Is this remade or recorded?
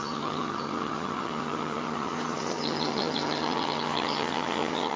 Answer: remade